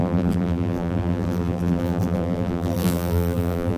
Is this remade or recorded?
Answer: remade